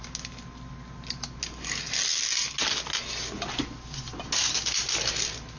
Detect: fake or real real